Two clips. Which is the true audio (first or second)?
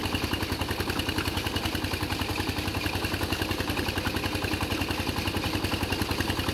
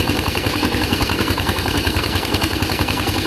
first